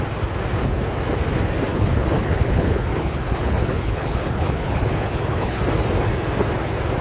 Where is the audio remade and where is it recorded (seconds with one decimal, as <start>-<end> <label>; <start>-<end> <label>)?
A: 0.0-1.7 recorded; 1.7-5.6 remade; 5.6-7.0 recorded